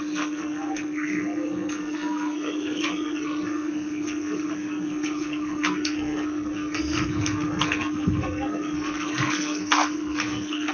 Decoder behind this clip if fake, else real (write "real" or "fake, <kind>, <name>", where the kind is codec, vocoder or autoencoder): fake, codec, SNAC